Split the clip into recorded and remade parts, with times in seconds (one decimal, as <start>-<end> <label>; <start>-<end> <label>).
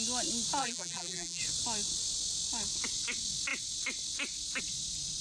0.0-0.6 recorded; 0.6-1.4 remade; 1.4-5.2 recorded